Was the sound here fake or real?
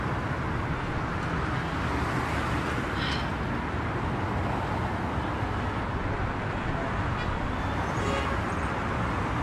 real